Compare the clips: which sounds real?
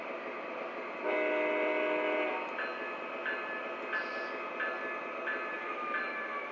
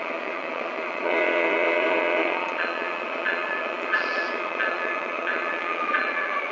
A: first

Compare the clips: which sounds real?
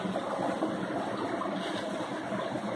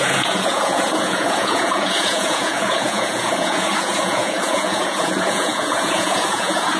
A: first